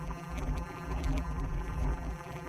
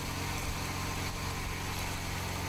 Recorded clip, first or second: second